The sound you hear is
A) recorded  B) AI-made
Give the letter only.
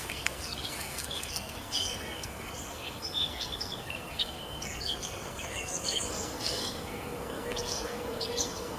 B